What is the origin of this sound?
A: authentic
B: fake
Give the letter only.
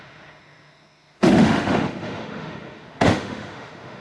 B